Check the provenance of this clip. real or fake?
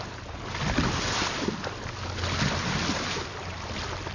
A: real